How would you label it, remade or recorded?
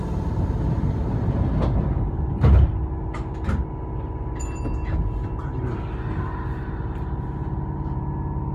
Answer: recorded